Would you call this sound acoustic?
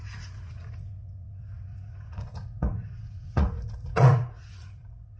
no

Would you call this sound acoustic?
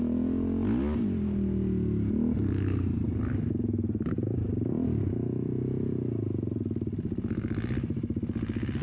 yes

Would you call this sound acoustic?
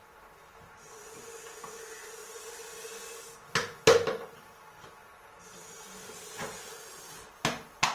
yes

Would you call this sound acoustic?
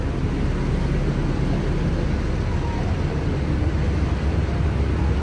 yes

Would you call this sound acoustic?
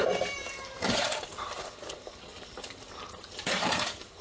no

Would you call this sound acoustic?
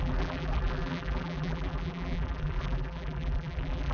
no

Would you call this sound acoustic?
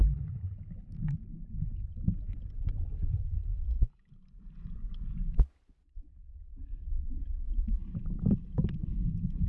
yes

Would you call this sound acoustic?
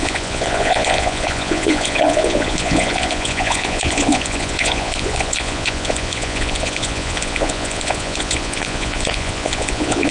no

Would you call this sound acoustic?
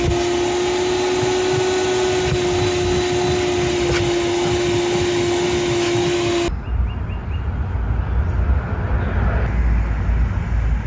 yes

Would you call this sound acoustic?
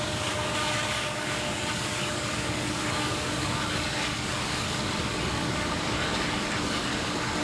no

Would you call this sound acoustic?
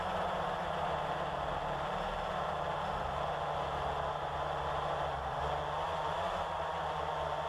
yes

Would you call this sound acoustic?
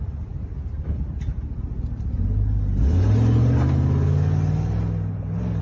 yes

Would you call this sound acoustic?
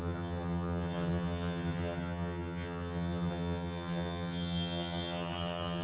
no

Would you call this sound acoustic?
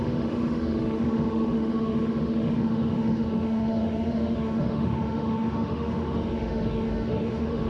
no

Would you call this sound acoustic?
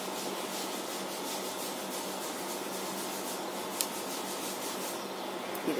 yes